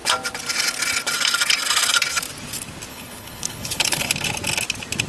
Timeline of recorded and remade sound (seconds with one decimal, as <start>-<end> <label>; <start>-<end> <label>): 0.0-2.9 recorded; 2.9-4.1 remade; 4.1-5.1 recorded